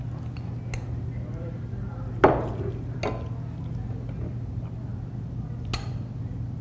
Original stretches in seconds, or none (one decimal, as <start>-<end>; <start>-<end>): 0.0-6.6